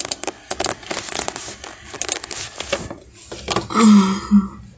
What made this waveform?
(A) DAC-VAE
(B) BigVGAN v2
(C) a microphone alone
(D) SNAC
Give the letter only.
C